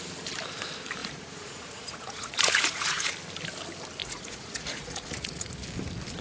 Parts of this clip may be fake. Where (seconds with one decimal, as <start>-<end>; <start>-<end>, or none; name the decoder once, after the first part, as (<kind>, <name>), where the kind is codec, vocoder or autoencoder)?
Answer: 1.0-3.1 (vocoder, Vocos); 4.0-5.5